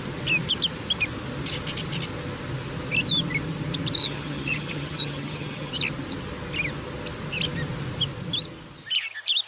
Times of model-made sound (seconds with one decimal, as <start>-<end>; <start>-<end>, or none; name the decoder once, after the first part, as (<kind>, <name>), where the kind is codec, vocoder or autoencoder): 4.0-5.7 (vocoder, HiFi-GAN)

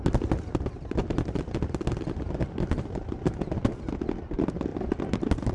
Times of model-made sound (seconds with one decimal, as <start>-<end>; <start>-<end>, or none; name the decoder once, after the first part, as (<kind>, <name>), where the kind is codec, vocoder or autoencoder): none

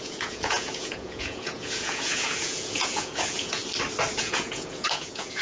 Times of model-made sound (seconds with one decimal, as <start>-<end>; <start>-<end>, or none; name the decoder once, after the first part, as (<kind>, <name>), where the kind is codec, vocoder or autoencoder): 0.0-3.6 (vocoder, Vocos); 4.2-5.4

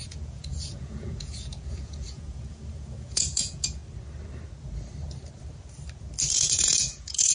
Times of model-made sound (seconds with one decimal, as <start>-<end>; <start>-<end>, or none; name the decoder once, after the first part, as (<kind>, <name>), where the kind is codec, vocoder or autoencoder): 0.0-3.8 (vocoder, Vocos); 6.3-7.3

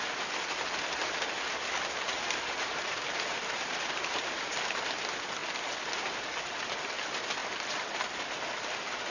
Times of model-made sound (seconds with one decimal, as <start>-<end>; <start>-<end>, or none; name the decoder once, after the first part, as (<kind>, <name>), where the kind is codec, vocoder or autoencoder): 1.0-4.5 (vocoder, BigVGAN v2)